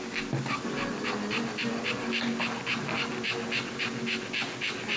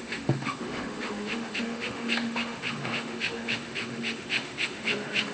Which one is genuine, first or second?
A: first